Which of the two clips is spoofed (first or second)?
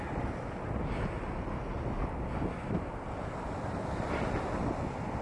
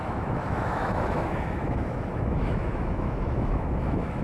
second